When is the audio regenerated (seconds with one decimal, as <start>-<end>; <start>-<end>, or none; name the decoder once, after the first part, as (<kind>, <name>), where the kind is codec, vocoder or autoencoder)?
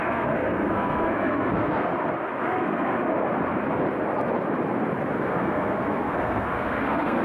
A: 0.0-1.9 (codec, SNAC); 2.4-2.9; 5.2-7.2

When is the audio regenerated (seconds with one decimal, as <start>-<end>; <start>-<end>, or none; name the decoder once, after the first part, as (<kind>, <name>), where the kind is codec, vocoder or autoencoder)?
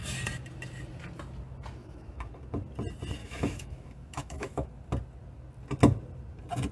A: 1.8-2.3 (autoencoder, DAC-VAE); 3.2-4.7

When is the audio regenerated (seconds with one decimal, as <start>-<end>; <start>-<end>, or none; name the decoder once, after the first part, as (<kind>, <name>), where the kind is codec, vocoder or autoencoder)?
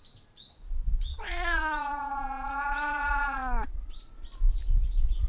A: 0.9-4.1 (vocoder, Vocos)